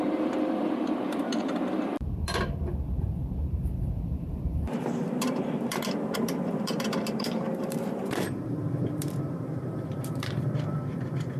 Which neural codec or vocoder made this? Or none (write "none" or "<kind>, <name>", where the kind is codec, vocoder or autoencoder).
vocoder, BigVGAN v2